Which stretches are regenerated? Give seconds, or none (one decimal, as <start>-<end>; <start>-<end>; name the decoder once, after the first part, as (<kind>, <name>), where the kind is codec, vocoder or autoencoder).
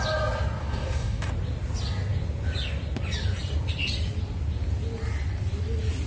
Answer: 0.6-1.3 (codec, DAC)